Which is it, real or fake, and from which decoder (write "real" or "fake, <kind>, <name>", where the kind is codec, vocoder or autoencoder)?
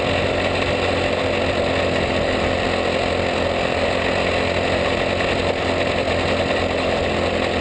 real